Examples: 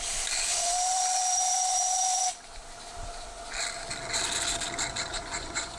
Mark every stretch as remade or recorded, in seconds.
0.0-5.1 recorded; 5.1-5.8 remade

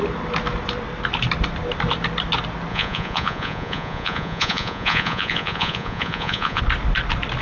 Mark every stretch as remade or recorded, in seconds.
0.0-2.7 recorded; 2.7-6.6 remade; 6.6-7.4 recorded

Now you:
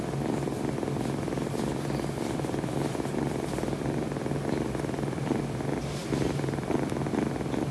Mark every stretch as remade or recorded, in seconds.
0.0-7.7 recorded